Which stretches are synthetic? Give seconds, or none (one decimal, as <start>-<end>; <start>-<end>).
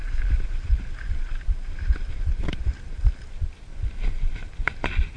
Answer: 0.0-3.1; 3.7-4.6